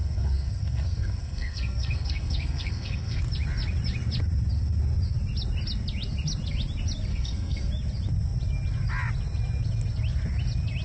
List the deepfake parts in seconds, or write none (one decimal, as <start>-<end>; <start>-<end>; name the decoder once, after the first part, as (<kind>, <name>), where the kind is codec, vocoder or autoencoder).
0.0-3.2 (codec, SNAC); 7.1-7.7

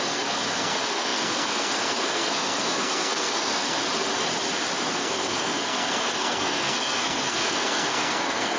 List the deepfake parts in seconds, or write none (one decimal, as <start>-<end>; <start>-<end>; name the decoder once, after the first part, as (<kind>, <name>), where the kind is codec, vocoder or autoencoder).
0.0-3.8 (codec, SNAC); 4.9-8.6